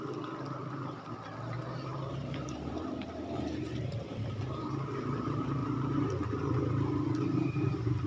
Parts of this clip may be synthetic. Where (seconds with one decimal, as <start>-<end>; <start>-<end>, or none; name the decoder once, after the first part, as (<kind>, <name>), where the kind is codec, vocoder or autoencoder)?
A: 1.9-4.0 (vocoder, BigVGAN v2)

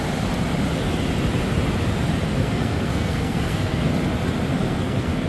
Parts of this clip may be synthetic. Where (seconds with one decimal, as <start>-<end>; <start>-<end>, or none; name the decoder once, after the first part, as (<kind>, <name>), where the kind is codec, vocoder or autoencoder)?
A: 2.3-3.9 (codec, SNAC); 4.5-5.3

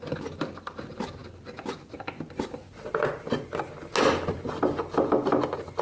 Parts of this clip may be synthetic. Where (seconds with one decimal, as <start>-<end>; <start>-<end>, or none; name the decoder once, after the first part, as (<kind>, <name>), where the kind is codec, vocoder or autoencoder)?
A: none

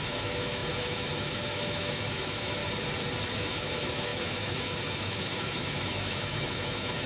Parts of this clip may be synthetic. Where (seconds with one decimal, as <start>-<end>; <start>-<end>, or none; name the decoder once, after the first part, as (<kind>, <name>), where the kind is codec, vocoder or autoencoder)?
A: 0.0-2.6 (autoencoder, DAC-VAE); 3.3-7.1

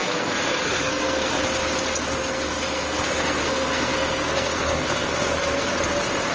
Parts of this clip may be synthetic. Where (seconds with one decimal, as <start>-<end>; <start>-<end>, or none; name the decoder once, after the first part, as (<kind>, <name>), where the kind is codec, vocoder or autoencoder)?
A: 0.0-1.4 (codec, SNAC); 2.2-5.7

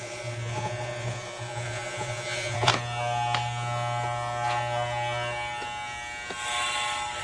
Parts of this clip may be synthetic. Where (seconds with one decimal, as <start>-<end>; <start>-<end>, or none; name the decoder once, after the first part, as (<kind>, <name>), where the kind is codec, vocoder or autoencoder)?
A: 0.0-2.7 (vocoder, Vocos)

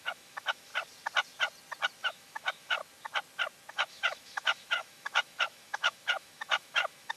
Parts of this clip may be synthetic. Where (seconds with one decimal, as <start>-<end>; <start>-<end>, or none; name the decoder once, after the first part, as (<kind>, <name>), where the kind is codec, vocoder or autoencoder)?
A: 0.0-0.7 (autoencoder, DAC-VAE); 2.0-2.8; 3.7-7.2

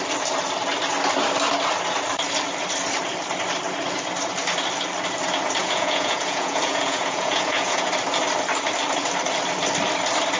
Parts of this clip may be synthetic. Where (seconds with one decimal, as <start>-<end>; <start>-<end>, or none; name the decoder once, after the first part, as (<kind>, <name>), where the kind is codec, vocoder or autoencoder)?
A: 5.6-7.9 (vocoder, Vocos)